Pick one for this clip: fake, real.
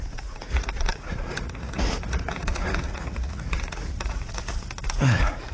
fake